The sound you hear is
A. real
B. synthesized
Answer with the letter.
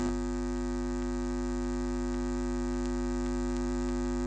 A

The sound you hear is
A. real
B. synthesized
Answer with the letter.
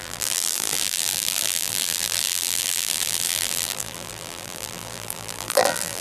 B